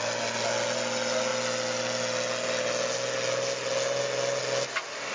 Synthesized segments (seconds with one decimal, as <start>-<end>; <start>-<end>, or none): none